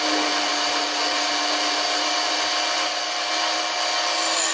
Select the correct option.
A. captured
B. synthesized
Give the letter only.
A